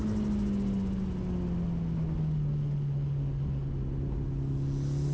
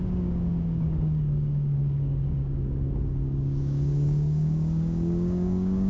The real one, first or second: first